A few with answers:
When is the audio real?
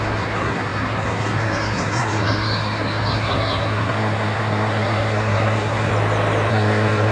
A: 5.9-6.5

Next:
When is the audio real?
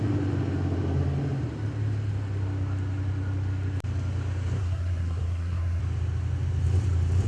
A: 0.0-4.6; 5.8-7.3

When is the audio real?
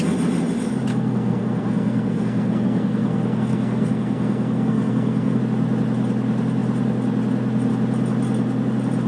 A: 0.0-0.9; 5.4-9.1